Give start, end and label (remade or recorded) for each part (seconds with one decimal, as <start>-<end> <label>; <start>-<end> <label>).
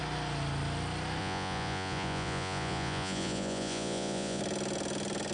0.0-1.2 recorded; 1.2-4.4 remade; 4.4-5.3 recorded